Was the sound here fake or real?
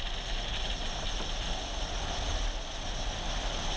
real